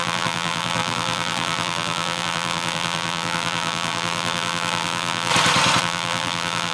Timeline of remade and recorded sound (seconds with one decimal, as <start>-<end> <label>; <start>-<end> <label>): 0.0-5.3 remade; 5.3-5.8 recorded; 5.8-6.7 remade